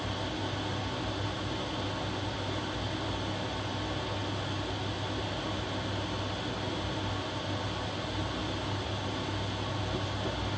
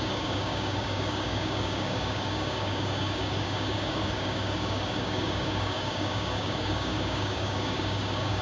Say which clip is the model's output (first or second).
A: second